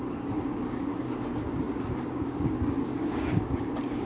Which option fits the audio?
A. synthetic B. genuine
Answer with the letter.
A